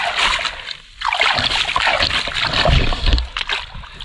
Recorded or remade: recorded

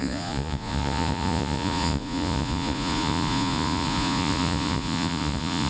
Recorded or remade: remade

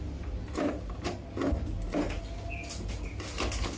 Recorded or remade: recorded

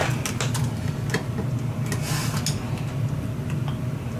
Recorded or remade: recorded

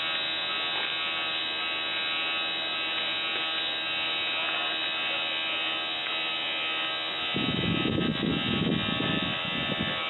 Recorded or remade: recorded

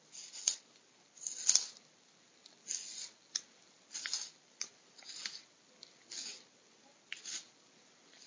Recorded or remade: recorded